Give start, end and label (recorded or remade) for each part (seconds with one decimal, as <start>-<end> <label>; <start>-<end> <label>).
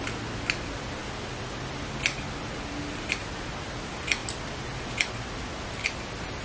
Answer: 0.0-6.4 recorded